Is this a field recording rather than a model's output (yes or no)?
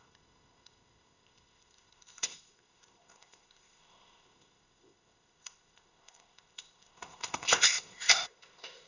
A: no